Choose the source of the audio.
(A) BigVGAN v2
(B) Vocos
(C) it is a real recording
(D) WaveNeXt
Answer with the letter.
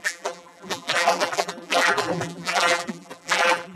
A